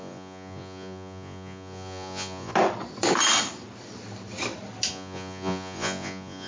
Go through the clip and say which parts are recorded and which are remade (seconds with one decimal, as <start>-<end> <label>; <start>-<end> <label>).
0.0-2.5 remade; 2.5-4.9 recorded; 4.9-6.5 remade